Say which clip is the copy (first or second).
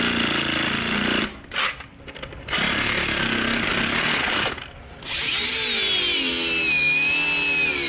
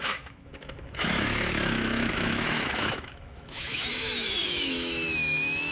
second